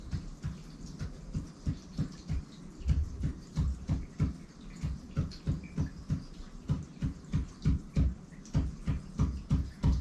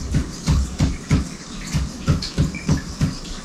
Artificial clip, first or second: second